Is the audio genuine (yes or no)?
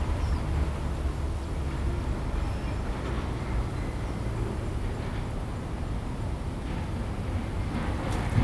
yes